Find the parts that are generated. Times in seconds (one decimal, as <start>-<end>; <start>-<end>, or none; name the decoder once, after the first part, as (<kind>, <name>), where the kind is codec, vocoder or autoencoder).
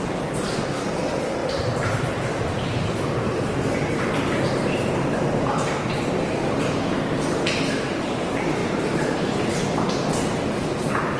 1.4-3.3 (vocoder, BigVGAN v2); 8.6-9.5